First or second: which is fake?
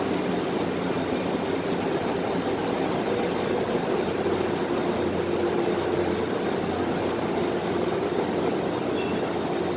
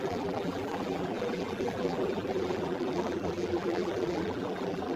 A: second